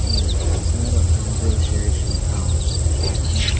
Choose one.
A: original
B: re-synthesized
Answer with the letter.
A